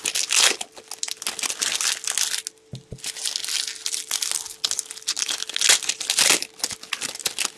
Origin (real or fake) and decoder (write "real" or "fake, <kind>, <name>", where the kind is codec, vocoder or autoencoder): real